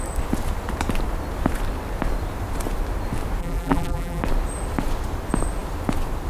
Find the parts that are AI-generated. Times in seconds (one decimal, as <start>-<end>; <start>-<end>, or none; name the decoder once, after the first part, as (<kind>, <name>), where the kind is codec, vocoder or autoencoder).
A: 3.4-4.2 (vocoder, BigVGAN v2)